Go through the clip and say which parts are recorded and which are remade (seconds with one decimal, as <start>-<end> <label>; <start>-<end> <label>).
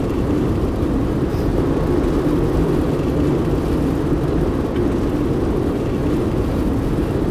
0.0-1.5 remade; 1.5-5.7 recorded; 5.7-7.3 remade